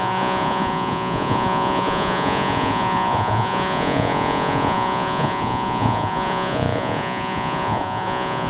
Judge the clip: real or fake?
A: fake